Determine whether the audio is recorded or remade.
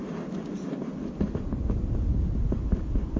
recorded